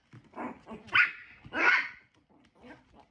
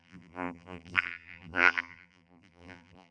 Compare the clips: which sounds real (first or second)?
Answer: first